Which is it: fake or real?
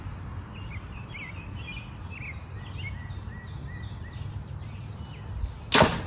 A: real